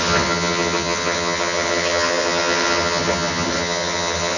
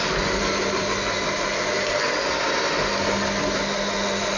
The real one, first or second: second